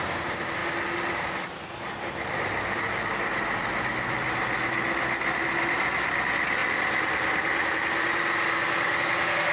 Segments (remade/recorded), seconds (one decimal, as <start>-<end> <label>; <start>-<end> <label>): 0.0-9.5 recorded